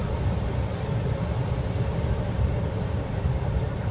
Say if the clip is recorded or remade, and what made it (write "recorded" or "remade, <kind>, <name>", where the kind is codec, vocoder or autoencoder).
recorded